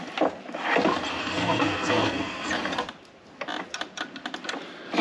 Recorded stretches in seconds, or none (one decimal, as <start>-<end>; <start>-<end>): 0.0-1.2; 2.5-5.0